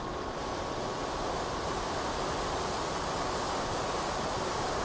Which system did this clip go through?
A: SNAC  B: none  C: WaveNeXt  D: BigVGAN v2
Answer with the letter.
D